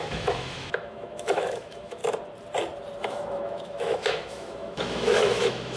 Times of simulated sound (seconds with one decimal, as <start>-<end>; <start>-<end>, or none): 0.0-2.0; 3.0-5.8